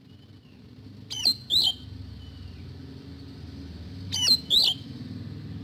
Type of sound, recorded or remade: recorded